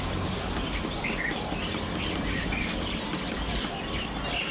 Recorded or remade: recorded